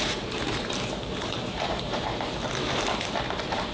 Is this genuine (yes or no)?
no